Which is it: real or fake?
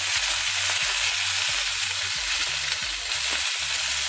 real